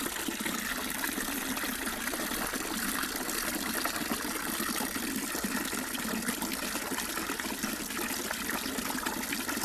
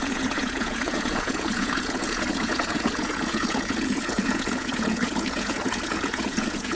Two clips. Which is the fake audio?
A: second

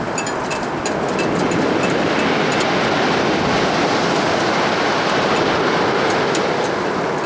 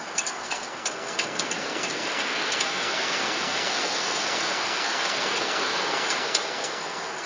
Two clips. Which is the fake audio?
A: second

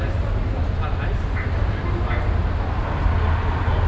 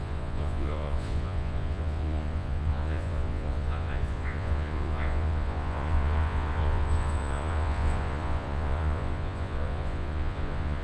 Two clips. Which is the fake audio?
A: second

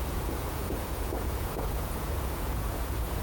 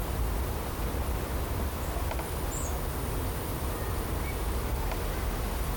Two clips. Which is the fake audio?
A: first